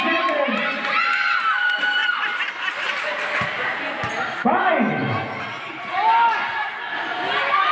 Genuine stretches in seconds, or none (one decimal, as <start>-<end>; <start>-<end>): 0.0-7.7